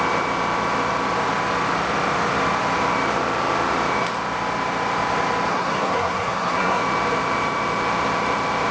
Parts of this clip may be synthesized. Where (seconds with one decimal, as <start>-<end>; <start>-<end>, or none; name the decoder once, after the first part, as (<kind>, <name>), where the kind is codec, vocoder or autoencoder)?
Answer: 5.5-6.8 (codec, SNAC)